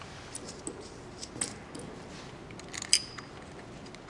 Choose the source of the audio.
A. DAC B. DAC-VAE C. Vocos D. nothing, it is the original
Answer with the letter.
D